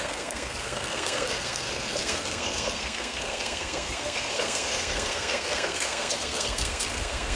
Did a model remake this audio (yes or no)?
yes